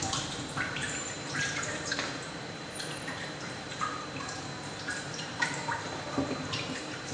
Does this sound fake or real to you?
fake